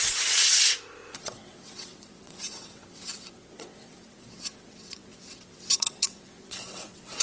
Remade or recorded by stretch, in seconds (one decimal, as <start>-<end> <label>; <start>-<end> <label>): 0.0-7.2 remade